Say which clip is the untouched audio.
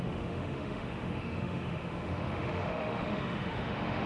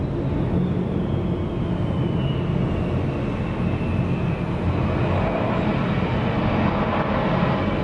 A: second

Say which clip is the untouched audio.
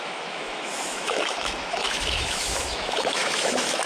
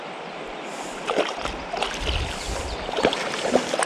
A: second